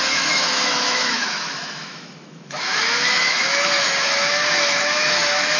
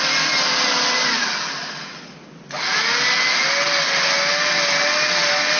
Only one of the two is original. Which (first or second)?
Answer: second